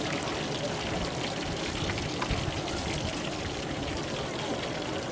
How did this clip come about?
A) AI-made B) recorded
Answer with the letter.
B